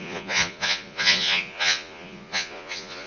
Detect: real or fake fake